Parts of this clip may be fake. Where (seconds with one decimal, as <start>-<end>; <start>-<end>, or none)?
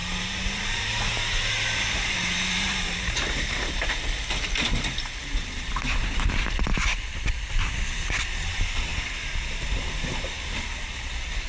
0.0-4.0; 6.7-7.5